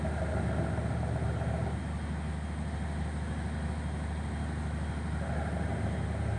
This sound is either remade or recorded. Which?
recorded